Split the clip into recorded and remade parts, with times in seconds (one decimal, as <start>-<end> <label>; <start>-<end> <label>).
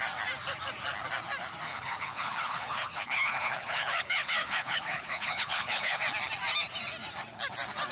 0.0-1.7 recorded; 1.7-6.0 remade; 6.0-7.9 recorded